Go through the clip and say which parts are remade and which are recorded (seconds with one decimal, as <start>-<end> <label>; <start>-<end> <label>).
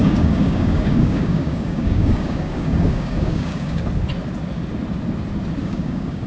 0.0-3.8 remade; 3.8-5.6 recorded; 5.6-6.3 remade